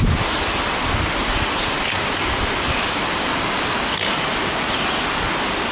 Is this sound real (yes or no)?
yes